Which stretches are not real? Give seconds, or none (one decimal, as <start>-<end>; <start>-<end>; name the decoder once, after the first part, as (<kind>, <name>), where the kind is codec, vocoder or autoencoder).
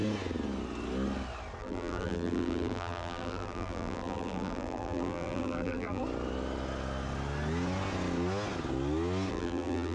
1.6-6.0 (vocoder, BigVGAN v2); 9.3-9.9